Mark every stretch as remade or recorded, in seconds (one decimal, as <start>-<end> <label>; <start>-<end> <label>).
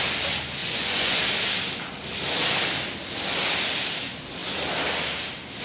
0.0-0.6 recorded; 0.6-1.2 remade; 1.2-5.6 recorded